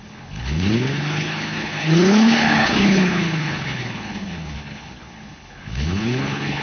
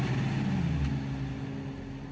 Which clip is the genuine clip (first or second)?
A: second